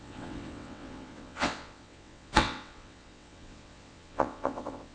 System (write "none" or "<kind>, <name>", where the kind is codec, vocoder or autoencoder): vocoder, WaveNeXt